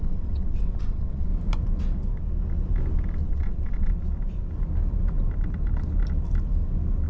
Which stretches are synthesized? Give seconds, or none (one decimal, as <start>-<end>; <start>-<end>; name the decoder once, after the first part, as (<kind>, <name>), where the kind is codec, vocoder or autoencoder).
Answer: 0.0-1.3 (vocoder, WaveNeXt); 3.2-3.9